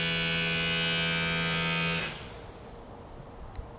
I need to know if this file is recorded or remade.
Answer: recorded